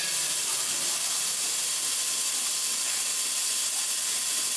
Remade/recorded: recorded